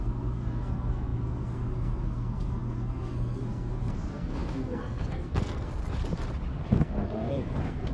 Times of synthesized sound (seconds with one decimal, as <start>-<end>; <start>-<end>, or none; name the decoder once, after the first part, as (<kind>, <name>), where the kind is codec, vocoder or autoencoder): 0.0-5.8 (codec, SNAC); 6.7-7.9

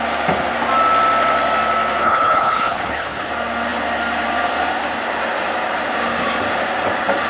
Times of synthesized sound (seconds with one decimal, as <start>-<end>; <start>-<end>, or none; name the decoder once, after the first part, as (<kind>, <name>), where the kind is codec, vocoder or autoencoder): 2.0-3.3 (codec, HILCodec)

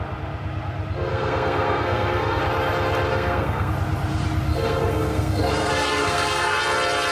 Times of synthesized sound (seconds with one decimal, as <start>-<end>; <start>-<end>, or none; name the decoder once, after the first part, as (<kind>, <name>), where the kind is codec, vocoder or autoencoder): 1.1-2.4 (codec, SNAC); 3.1-3.7; 4.5-6.6

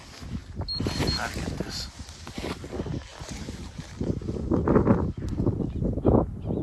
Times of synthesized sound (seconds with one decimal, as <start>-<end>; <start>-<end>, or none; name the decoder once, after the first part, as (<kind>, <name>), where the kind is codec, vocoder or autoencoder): 0.4-1.0 (vocoder, BigVGAN v2)

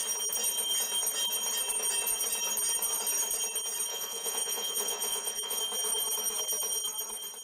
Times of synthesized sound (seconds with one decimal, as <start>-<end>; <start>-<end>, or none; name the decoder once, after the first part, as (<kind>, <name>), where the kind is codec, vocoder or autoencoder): 3.9-5.6 (vocoder, Vocos)

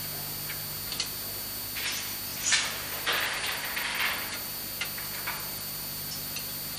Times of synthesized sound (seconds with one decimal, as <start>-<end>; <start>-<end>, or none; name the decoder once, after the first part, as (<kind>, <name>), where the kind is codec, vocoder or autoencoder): 2.3-3.1 (vocoder, BigVGAN v2)

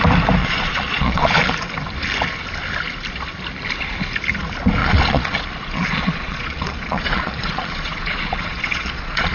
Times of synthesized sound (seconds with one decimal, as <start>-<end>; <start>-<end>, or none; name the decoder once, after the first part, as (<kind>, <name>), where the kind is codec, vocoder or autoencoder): 0.4-1.5 (vocoder, Vocos); 4.8-9.3